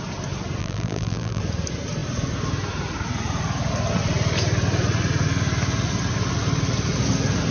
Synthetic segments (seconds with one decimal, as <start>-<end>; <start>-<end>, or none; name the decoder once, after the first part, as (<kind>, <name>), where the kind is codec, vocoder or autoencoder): 0.6-1.4 (vocoder, BigVGAN v2)